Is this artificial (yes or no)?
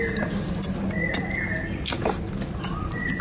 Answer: no